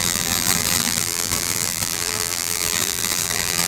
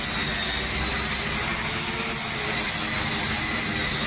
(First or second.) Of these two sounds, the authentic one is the second